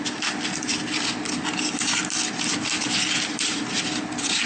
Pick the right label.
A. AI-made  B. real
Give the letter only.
B